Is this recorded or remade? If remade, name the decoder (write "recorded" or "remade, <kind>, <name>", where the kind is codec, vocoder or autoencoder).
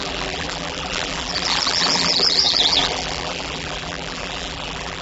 remade, vocoder, BigVGAN v2